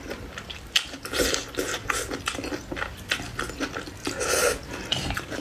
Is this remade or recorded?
recorded